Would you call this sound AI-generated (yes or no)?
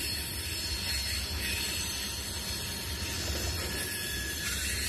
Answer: no